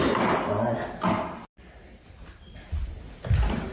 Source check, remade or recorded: recorded